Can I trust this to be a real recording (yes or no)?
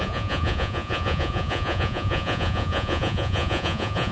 no